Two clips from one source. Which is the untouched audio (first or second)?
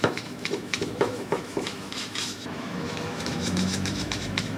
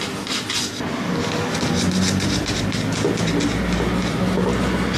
second